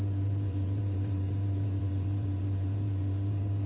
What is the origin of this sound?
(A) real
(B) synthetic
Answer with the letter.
B